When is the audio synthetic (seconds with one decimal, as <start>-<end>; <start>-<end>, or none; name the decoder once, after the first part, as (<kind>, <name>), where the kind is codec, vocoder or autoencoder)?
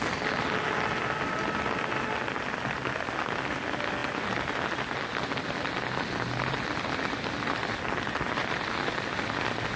none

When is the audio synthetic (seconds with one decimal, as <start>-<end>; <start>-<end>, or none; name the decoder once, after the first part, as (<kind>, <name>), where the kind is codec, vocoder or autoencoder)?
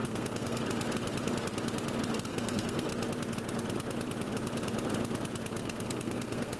0.0-0.6 (codec, SNAC); 2.3-2.9; 5.6-6.6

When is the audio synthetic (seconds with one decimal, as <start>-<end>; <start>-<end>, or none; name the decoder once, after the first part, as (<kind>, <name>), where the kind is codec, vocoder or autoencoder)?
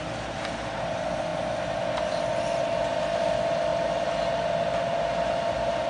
none